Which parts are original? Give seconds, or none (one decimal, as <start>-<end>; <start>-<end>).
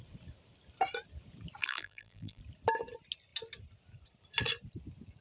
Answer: 0.0-1.6; 2.4-5.2